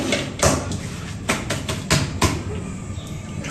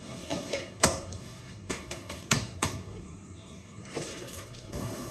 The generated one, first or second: second